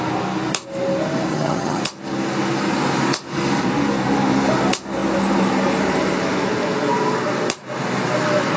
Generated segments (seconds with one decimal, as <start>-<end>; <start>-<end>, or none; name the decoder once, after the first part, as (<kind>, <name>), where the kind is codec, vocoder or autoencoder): 1.3-1.8 (vocoder, HiFi-GAN)